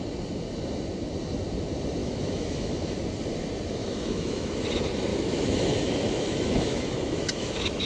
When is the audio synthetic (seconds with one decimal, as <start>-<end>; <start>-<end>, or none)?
2.0-3.0; 3.8-4.6; 5.1-7.9